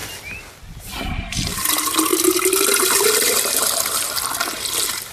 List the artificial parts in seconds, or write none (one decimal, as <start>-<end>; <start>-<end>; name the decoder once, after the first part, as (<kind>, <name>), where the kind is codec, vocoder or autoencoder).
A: none